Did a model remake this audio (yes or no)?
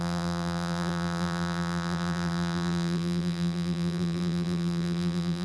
yes